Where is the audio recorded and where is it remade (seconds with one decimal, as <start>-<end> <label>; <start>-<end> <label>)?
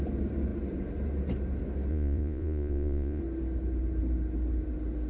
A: 0.0-1.9 recorded; 1.9-3.2 remade; 3.2-5.1 recorded